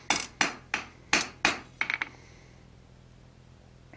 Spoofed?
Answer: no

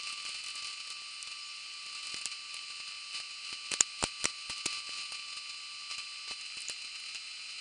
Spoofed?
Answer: no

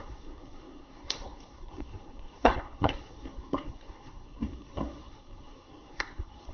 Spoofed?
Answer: yes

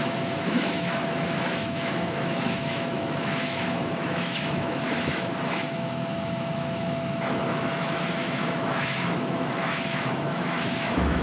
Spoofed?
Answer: yes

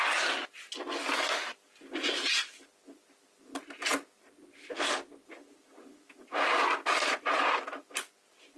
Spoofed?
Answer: no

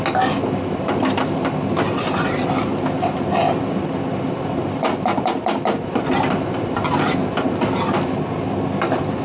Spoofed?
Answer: no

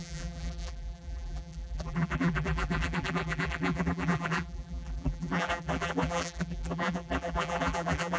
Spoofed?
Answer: yes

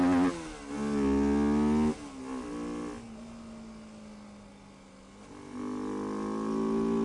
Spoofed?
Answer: no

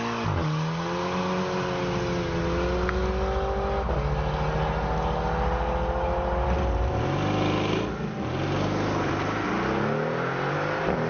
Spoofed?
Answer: no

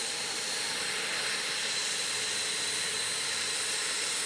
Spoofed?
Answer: no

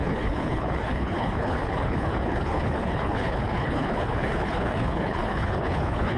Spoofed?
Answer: yes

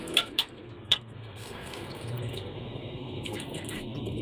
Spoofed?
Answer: yes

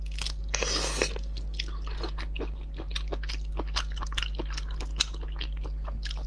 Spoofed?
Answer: no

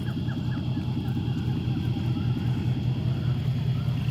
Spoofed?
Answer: no